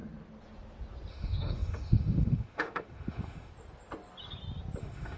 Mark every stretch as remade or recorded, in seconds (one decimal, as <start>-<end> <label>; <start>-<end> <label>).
0.0-1.1 recorded; 1.1-3.5 remade; 3.5-4.8 recorded; 4.8-5.2 remade